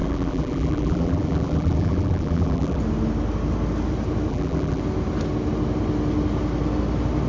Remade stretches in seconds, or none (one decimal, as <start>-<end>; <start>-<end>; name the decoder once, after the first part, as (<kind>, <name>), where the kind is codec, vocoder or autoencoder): 0.0-2.8 (vocoder, BigVGAN v2); 4.3-4.8